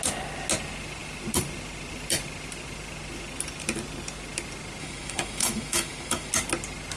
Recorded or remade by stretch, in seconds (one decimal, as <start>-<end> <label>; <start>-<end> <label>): 0.0-4.8 recorded; 4.8-6.3 remade; 6.3-7.0 recorded